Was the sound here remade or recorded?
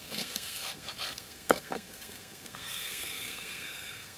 remade